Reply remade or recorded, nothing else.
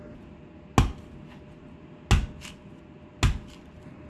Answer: recorded